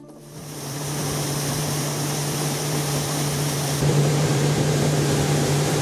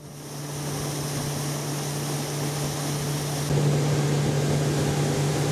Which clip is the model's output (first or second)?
first